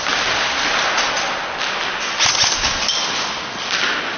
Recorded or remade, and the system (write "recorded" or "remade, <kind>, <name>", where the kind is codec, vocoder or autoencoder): recorded